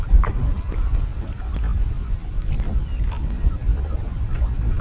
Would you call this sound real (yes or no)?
yes